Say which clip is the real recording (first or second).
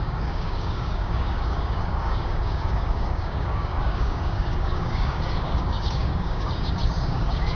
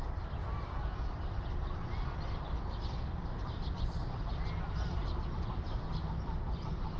second